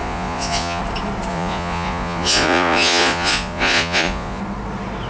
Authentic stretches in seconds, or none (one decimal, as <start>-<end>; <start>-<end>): 0.8-1.3; 4.4-5.1